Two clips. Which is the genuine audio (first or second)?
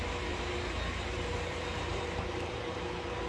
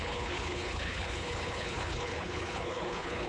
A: first